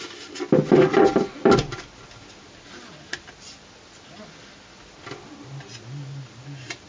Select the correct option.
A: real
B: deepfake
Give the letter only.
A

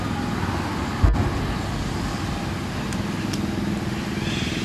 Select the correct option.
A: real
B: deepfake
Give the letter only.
A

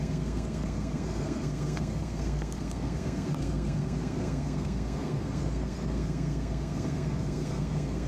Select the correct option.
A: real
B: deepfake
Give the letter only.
B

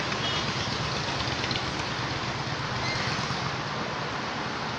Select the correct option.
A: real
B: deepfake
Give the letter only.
A